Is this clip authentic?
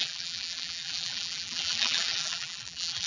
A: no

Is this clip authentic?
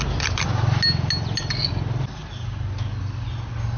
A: yes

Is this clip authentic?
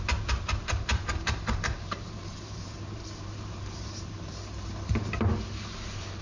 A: no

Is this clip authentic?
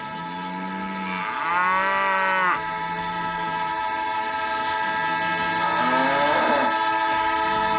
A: yes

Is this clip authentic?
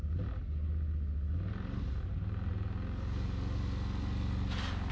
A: yes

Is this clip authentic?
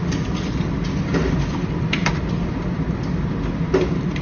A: no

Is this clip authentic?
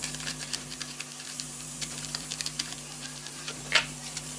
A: no